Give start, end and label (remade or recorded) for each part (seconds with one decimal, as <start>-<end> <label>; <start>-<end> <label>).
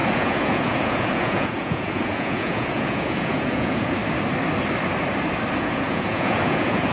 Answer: 0.0-4.0 remade; 4.0-5.6 recorded; 5.6-6.9 remade